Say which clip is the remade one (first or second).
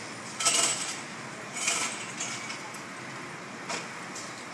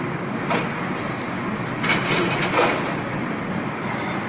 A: second